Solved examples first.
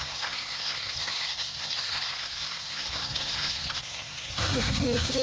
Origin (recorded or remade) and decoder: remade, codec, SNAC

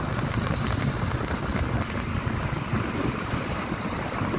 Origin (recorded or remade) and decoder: recorded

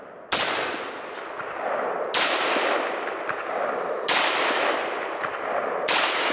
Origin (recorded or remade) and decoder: recorded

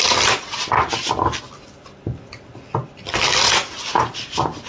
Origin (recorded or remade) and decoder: recorded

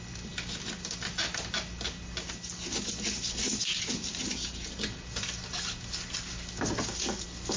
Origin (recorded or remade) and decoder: recorded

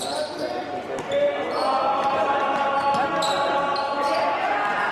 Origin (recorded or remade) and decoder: recorded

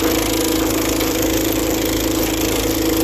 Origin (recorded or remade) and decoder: recorded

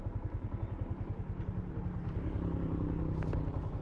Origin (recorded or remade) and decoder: recorded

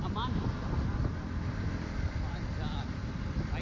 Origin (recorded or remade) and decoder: recorded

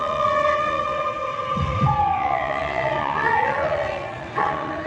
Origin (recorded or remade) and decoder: remade, vocoder, WaveNeXt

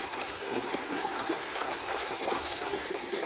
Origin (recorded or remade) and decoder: remade, codec, SNAC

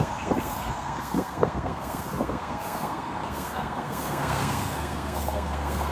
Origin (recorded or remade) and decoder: remade, codec, SNAC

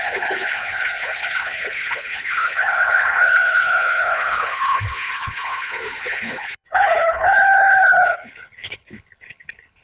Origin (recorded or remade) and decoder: remade, codec, HILCodec